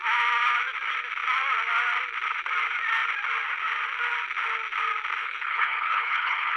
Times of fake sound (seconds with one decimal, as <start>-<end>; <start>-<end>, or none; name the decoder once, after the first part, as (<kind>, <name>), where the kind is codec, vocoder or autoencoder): 5.2-6.6 (codec, HILCodec)